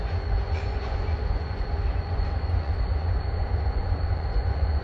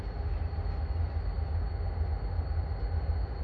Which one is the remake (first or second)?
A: first